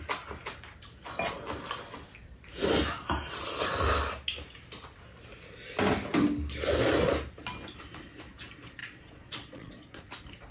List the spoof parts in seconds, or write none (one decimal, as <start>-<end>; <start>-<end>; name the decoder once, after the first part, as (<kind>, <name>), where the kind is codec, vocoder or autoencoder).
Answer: 8.8-10.1 (vocoder, Vocos)